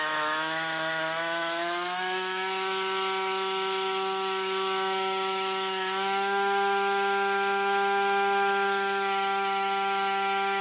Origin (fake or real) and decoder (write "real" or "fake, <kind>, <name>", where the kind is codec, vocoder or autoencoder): fake, autoencoder, DAC-VAE